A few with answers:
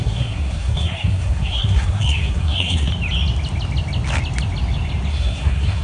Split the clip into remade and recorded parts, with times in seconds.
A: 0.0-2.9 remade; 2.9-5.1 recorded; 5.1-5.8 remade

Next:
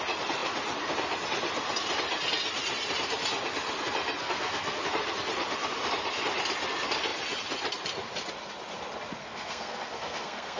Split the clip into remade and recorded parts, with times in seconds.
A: 0.0-4.2 recorded; 4.2-4.8 remade; 4.8-9.2 recorded; 9.2-10.6 remade

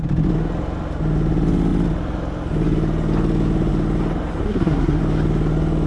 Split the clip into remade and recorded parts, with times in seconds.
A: 0.0-4.4 recorded; 4.4-5.0 remade; 5.0-5.9 recorded

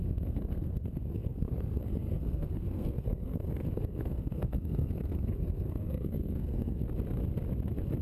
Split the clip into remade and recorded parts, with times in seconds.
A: 0.0-6.8 remade; 6.8-8.0 recorded